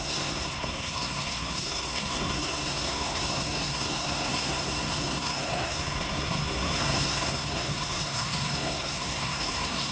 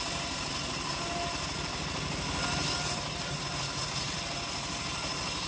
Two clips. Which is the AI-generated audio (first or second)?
first